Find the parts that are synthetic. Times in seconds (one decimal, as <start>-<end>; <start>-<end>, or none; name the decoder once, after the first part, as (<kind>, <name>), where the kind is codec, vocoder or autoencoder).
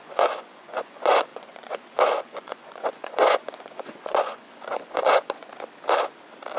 0.0-5.5 (vocoder, Vocos)